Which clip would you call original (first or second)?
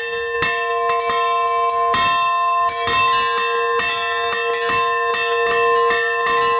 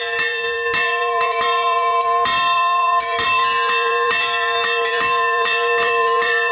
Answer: first